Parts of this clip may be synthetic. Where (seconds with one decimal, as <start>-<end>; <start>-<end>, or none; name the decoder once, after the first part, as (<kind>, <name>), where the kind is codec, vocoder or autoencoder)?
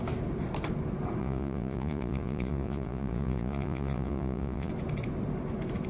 1.2-4.7 (vocoder, Vocos)